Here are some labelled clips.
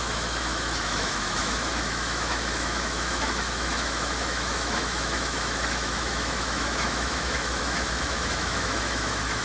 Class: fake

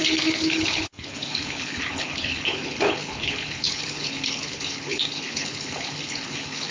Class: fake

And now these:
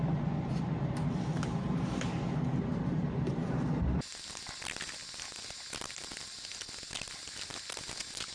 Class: real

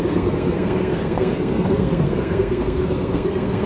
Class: fake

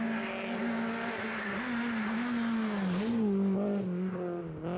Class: real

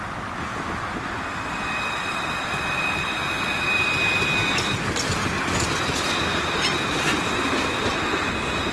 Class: real